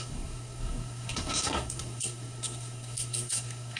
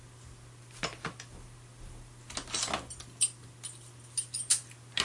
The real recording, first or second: second